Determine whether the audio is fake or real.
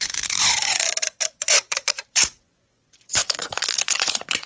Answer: fake